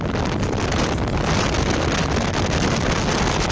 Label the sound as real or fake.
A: real